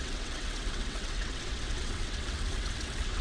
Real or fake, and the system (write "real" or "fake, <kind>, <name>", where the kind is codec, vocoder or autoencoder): fake, vocoder, WaveNeXt